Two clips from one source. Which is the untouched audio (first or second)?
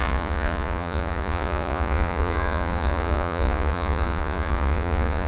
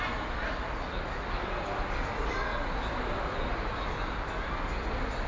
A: second